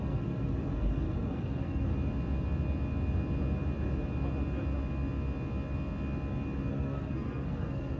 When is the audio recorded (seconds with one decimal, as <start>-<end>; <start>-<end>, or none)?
1.9-6.7